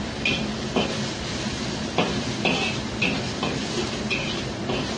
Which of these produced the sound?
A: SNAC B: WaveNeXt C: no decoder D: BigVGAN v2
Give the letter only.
C